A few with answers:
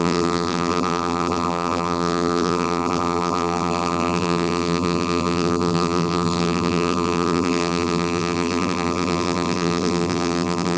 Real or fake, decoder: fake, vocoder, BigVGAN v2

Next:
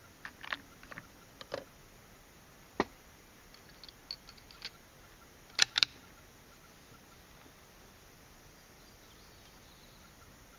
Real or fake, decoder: real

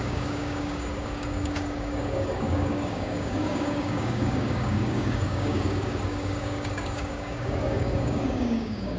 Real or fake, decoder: fake, codec, DAC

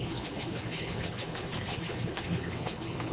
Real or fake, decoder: fake, codec, HILCodec